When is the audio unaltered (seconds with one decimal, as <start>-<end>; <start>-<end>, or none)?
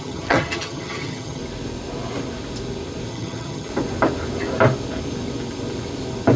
1.4-3.1; 3.7-6.4